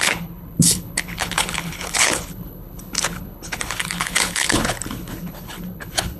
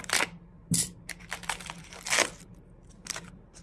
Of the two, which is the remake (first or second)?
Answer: first